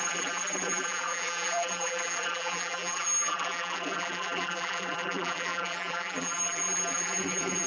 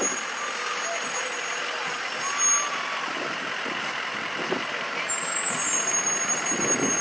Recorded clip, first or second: second